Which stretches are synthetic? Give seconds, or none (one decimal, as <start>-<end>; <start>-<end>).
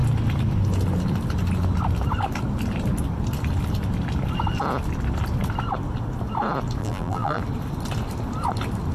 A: 6.8-7.4